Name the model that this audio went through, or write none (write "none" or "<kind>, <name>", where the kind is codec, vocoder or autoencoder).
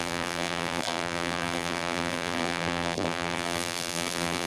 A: vocoder, BigVGAN v2